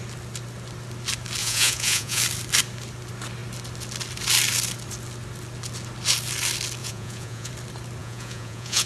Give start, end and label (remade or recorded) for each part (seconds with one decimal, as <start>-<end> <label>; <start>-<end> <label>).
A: 0.0-1.4 recorded; 1.4-2.2 remade; 2.2-6.8 recorded; 6.8-7.5 remade; 7.5-8.0 recorded; 8.0-8.9 remade